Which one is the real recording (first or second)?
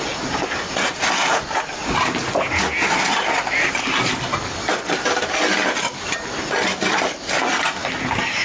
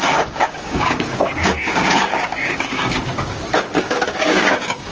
first